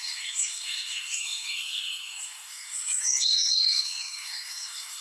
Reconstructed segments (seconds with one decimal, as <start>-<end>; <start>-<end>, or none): 0.0-5.0